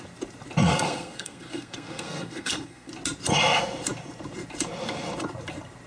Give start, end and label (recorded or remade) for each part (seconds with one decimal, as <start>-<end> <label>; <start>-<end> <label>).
0.0-0.7 recorded; 0.7-2.9 remade; 2.9-5.9 recorded